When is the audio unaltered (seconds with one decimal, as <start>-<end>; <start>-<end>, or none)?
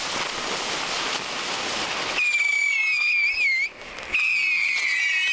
0.0-5.3